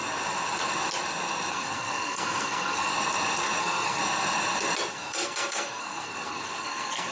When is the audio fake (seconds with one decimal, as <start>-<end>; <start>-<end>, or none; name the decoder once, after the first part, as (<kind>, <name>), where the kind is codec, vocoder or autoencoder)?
1.5-2.9 (codec, SNAC); 3.6-4.0; 4.9-7.1